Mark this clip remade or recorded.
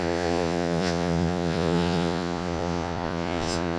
remade